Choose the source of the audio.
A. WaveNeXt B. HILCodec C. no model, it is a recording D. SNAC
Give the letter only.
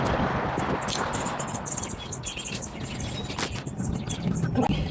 C